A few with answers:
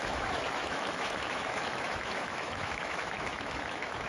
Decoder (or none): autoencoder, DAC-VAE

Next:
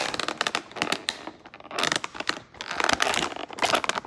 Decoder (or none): none